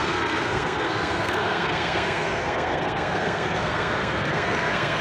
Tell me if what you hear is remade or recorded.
remade